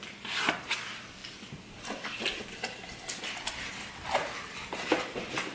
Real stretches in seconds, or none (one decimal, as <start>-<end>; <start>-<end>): 0.0-5.5